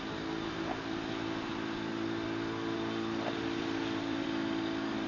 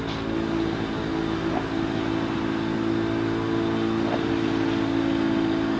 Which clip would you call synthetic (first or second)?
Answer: first